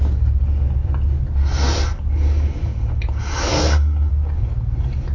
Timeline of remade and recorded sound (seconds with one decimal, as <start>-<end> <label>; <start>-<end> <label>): 0.0-3.5 recorded; 3.5-4.1 remade; 4.1-5.1 recorded